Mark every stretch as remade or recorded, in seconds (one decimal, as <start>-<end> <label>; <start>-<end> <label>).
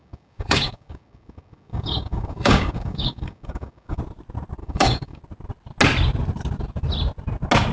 0.0-4.0 remade; 4.0-4.6 recorded; 4.6-5.2 remade; 5.2-7.7 recorded